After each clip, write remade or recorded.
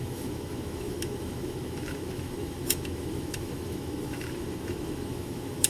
remade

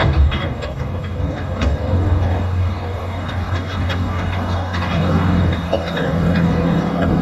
remade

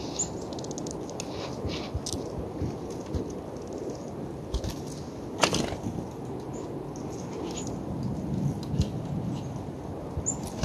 recorded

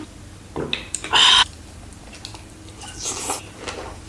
recorded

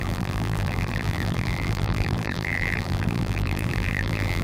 remade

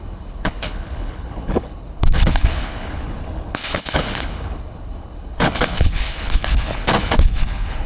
remade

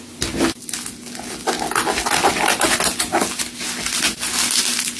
recorded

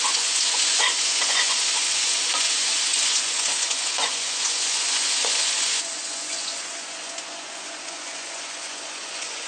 remade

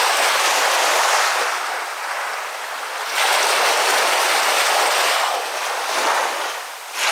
recorded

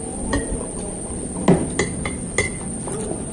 recorded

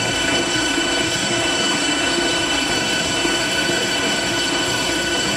remade